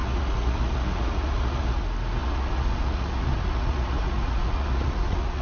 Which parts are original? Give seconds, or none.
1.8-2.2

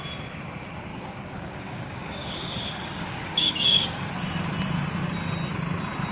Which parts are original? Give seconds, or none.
0.0-0.9; 4.1-6.1

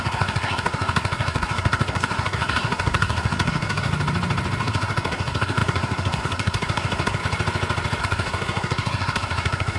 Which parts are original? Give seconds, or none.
3.9-4.6; 7.2-8.0

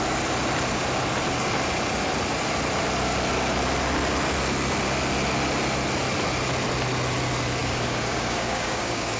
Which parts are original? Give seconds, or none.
0.0-7.6